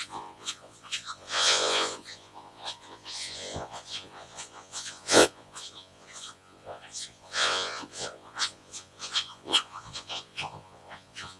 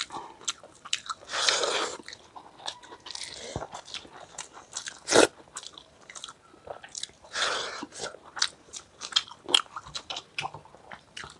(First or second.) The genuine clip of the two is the second